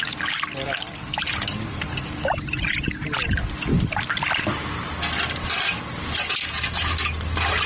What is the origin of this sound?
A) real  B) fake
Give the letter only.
A